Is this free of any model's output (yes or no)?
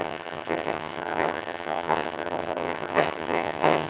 no